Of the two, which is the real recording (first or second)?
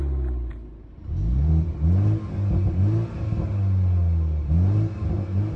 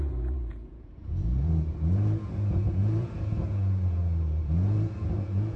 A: first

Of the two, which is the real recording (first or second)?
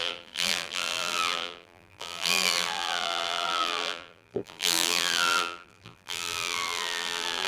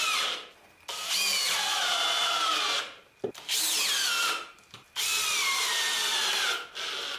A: second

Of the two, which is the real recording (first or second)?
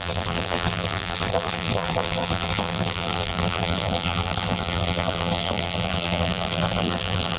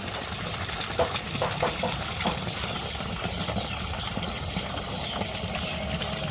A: second